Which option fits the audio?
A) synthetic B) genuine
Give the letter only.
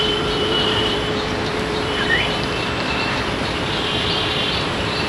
A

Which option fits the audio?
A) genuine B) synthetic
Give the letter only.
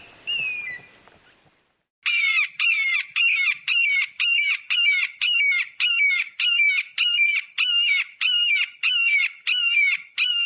A